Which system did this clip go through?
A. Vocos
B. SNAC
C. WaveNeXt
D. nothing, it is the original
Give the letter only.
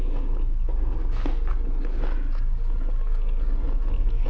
D